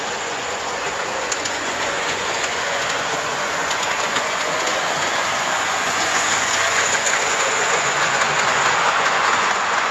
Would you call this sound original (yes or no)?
no